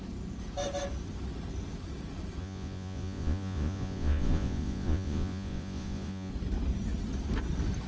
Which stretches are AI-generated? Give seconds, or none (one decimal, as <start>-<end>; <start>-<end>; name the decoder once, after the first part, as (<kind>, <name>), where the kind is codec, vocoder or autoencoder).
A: 2.4-6.3 (vocoder, Vocos)